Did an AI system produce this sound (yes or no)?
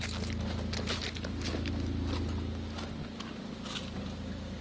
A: no